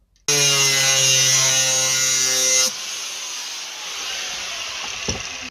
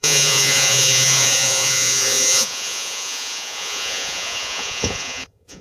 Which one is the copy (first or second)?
second